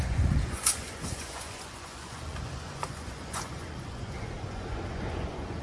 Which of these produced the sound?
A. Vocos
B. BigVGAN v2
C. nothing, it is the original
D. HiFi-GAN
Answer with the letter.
A